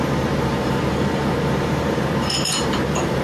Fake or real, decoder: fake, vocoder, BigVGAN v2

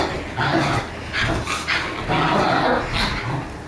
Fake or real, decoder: real